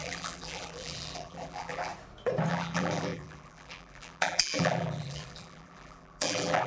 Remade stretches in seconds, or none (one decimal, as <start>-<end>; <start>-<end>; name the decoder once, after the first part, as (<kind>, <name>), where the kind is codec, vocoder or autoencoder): 0.0-1.9 (vocoder, BigVGAN v2); 2.5-6.7